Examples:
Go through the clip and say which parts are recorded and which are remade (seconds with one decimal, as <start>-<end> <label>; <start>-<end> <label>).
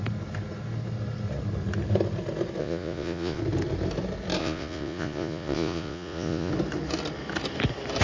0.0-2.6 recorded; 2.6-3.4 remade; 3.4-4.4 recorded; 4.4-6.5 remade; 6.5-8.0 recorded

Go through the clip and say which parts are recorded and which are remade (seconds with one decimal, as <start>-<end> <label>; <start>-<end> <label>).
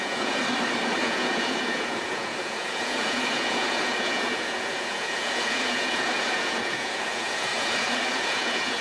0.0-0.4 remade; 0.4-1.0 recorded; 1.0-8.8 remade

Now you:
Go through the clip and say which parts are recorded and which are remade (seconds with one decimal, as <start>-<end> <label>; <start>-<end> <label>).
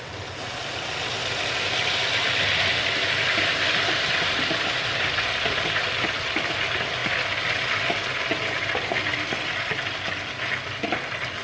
0.0-11.4 recorded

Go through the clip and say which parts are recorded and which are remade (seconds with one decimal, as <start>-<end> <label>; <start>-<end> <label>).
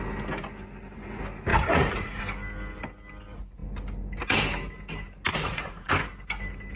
0.0-1.5 recorded; 1.5-2.2 remade; 2.2-5.3 recorded; 5.3-5.9 remade; 5.9-6.8 recorded